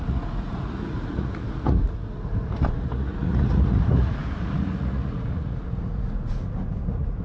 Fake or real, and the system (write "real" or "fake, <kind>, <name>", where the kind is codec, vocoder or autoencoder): fake, vocoder, Vocos